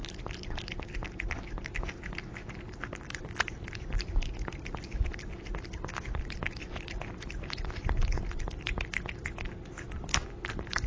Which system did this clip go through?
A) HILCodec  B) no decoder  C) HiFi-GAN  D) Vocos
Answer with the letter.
B